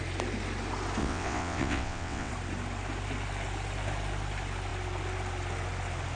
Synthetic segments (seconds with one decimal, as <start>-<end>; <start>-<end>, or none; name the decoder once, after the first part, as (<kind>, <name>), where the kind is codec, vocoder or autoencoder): 1.0-2.3 (vocoder, WaveNeXt)